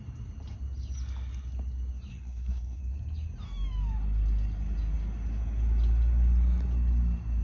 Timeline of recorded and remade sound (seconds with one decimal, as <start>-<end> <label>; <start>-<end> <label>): 0.0-2.1 recorded; 2.1-2.8 remade; 2.8-7.4 recorded